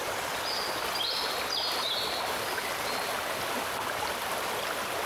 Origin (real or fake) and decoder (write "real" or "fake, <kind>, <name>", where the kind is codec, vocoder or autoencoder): real